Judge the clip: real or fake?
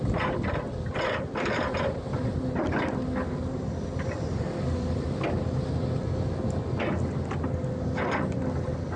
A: real